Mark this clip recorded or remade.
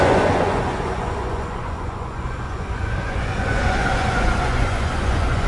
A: remade